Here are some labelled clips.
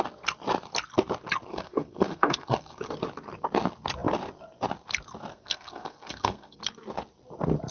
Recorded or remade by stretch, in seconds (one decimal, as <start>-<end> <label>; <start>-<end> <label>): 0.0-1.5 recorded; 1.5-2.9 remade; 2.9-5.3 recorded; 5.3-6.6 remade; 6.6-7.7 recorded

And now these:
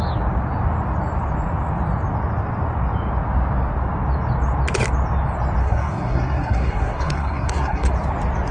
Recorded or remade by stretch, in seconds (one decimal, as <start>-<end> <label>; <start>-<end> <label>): 0.0-5.6 recorded; 5.6-7.9 remade; 7.9-8.5 recorded

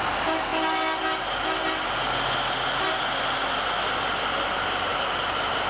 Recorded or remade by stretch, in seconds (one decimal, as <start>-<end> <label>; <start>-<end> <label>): 0.0-5.7 recorded

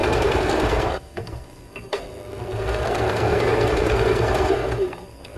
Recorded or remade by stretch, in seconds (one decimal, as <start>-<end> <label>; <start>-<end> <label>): 0.0-5.4 remade